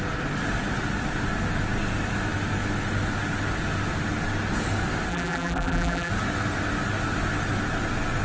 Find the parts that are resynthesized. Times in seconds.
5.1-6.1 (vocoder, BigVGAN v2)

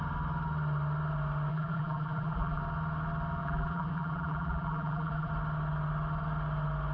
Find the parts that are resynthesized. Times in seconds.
1.5-2.6 (vocoder, BigVGAN v2); 3.4-5.3

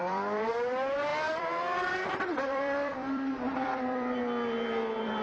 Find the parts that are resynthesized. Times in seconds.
0.0-0.5 (vocoder, BigVGAN v2); 1.1-4.2

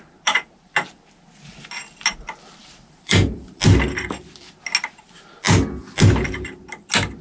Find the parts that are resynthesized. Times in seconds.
2.6-3.6 (vocoder, BigVGAN v2)

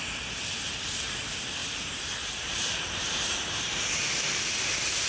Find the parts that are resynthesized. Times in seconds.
1.6-5.1 (vocoder, BigVGAN v2)

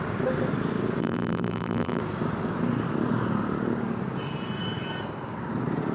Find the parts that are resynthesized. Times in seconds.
1.0-2.0 (vocoder, BigVGAN v2)

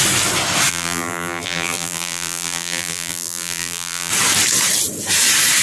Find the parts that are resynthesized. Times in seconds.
0.7-4.1 (vocoder, BigVGAN v2)